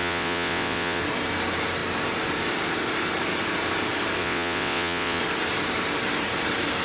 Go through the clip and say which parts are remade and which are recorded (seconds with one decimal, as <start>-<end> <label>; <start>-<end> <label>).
0.0-1.0 remade; 1.0-4.2 recorded; 4.2-5.2 remade; 5.2-6.8 recorded